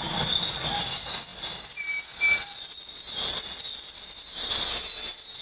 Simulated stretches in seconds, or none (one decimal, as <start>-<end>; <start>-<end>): none